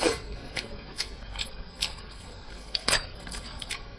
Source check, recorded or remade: remade